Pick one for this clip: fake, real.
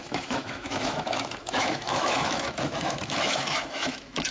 fake